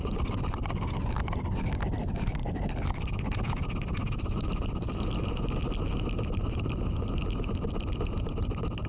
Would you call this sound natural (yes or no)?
yes